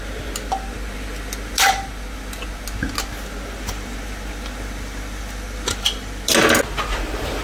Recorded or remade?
recorded